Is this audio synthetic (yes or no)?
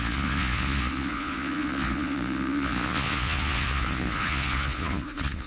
yes